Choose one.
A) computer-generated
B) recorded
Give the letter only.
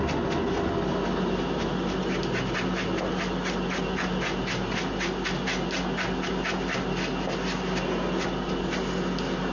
B